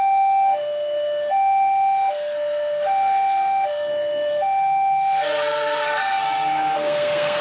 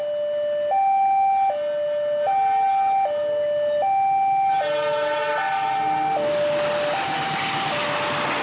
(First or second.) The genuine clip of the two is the second